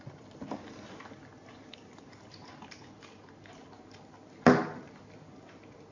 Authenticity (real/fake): real